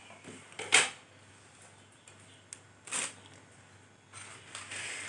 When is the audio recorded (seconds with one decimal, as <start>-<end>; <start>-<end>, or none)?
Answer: 0.0-5.1